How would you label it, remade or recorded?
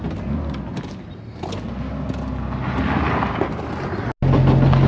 recorded